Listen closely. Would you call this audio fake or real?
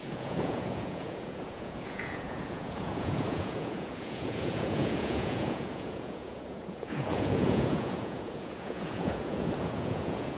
fake